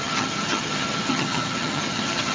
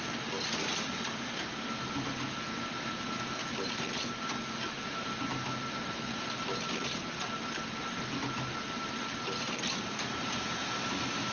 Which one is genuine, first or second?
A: second